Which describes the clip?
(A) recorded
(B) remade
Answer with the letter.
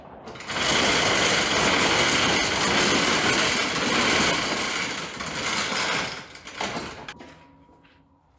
A